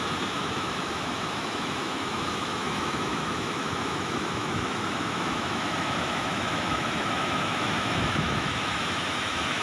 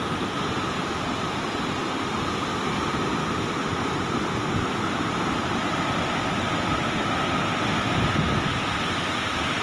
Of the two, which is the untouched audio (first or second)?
second